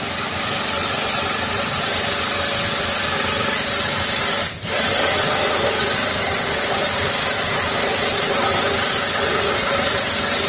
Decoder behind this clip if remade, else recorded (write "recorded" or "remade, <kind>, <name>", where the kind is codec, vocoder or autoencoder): recorded